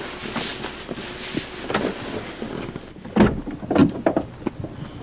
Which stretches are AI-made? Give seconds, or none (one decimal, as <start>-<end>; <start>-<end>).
none